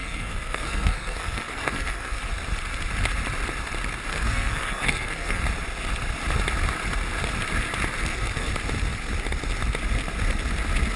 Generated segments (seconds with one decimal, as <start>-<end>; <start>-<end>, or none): 0.0-2.2; 4.1-5.4; 8.0-8.5